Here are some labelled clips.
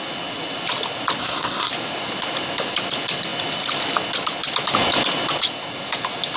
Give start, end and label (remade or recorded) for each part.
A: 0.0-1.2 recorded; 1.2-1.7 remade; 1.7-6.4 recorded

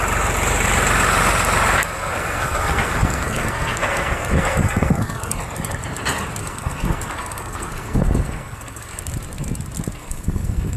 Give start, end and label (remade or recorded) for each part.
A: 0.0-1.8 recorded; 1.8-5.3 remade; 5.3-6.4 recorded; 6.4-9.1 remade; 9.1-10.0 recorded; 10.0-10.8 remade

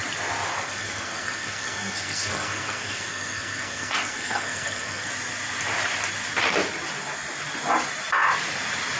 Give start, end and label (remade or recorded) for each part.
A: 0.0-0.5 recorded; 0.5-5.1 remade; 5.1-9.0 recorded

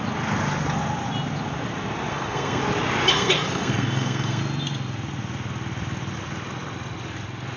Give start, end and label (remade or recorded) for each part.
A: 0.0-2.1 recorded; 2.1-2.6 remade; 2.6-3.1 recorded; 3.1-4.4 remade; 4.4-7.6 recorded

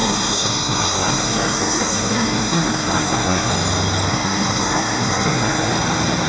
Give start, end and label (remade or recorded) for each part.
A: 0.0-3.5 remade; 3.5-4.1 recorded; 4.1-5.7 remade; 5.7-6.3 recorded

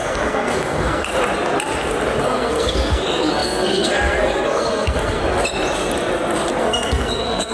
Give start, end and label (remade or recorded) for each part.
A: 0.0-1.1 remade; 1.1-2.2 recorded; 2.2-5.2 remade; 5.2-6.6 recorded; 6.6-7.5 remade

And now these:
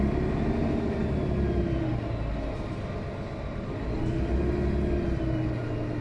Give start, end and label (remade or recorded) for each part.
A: 0.0-6.0 recorded